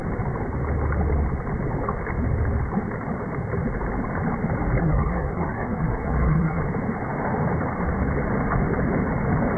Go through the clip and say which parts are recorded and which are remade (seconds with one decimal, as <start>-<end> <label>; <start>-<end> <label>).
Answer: 0.0-4.8 recorded; 4.8-6.6 remade; 6.6-9.6 recorded